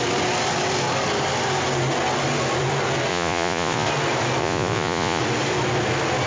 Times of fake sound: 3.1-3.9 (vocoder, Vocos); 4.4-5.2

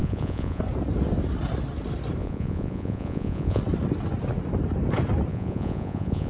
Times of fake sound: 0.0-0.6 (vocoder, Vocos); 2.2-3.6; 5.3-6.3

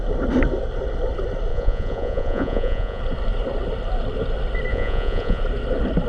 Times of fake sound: 1.5-3.0 (vocoder, Vocos); 4.7-5.4

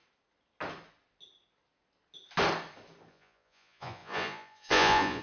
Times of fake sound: 3.1-5.2 (vocoder, Vocos)

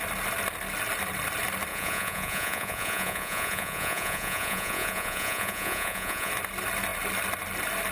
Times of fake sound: 1.7-6.3 (vocoder, Vocos)

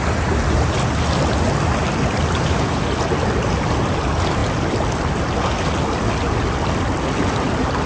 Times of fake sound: none